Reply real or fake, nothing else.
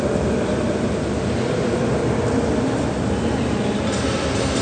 real